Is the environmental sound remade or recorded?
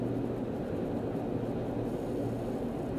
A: recorded